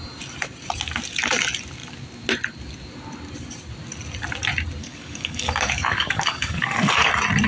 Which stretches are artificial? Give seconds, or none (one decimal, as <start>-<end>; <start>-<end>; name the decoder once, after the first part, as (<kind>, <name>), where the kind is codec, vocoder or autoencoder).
4.8-7.1 (codec, DAC)